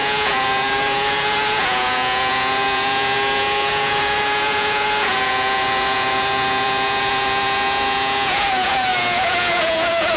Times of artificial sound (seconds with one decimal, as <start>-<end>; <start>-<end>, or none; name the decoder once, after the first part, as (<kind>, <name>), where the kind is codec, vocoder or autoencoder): 0.0-10.2 (vocoder, Vocos)